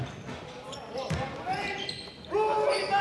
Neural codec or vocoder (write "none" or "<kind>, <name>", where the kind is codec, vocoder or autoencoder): none